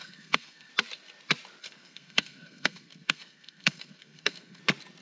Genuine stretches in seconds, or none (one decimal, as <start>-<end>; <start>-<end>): 0.7-1.6; 4.6-5.0